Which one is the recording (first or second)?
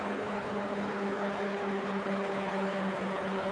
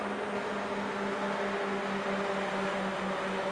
second